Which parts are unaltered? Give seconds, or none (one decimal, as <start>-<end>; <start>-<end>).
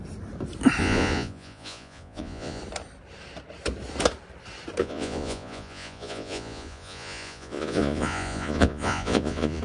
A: 0.0-0.8; 2.6-4.8